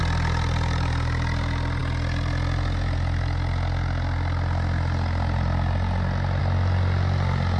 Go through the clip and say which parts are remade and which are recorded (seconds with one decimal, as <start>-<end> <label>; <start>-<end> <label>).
0.0-7.6 recorded